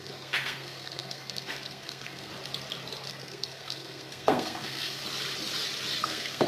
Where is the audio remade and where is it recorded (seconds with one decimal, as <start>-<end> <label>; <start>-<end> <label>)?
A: 0.0-2.3 remade; 2.3-3.1 recorded; 3.1-5.0 remade; 5.0-6.0 recorded; 6.0-6.5 remade